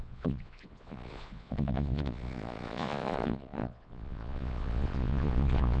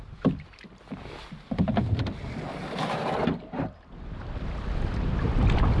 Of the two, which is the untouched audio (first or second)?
second